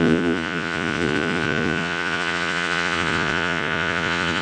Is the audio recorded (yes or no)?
no